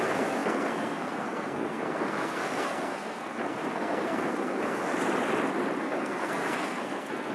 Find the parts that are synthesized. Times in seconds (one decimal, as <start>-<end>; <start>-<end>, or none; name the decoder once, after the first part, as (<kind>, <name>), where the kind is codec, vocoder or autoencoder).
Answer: 0.0-4.9 (codec, SNAC); 5.8-7.3